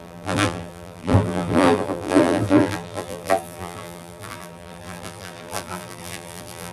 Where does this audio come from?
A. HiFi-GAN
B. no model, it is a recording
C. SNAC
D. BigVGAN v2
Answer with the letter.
D